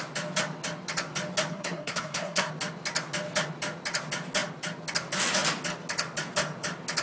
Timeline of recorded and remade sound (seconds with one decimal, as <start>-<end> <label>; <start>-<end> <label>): 0.0-1.5 recorded; 1.5-2.5 remade; 2.5-7.0 recorded